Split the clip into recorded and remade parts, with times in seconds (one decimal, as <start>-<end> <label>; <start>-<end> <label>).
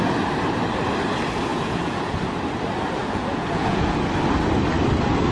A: 0.0-1.5 recorded; 1.5-2.2 remade; 2.2-3.0 recorded; 3.0-4.0 remade; 4.0-5.3 recorded